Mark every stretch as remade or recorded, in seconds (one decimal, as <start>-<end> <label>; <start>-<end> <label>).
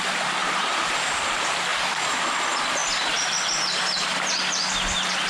0.0-0.4 recorded; 0.4-1.1 remade; 1.1-1.7 recorded; 1.7-2.2 remade; 2.2-5.3 recorded